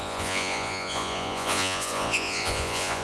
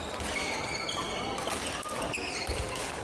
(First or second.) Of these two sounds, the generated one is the first